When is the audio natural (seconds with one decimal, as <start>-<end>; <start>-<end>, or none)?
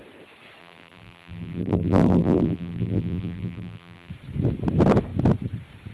0.0-0.6; 4.1-5.9